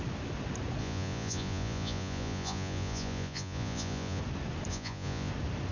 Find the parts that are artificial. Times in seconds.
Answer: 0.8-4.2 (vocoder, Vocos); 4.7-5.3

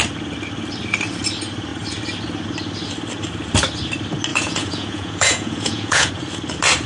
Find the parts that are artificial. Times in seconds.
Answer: 4.3-6.1 (vocoder, Vocos)

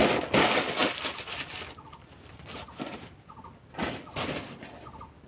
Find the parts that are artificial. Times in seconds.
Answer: none

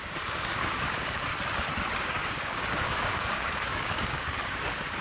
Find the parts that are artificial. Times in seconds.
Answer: 0.0-1.3 (codec, DAC); 2.0-5.0

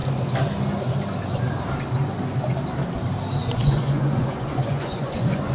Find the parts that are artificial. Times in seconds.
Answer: 3.4-5.5 (vocoder, Vocos)